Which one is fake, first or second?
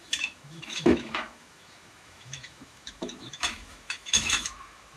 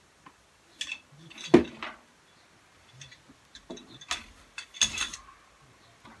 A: first